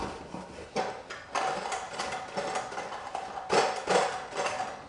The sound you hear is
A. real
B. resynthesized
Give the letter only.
A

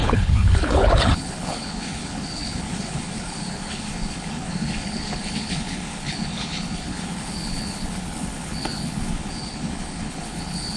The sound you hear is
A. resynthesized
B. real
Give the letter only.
A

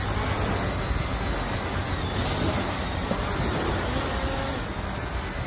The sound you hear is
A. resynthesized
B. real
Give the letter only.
B